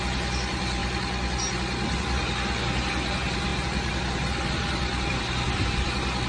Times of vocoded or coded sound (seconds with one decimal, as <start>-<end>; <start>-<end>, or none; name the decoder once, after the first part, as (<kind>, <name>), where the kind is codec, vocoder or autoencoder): none